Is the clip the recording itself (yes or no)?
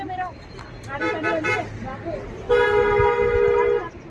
yes